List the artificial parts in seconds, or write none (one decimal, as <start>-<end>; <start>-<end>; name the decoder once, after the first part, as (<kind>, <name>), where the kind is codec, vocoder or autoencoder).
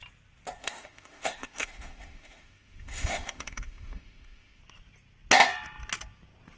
0.6-4.6 (autoencoder, DAC-VAE)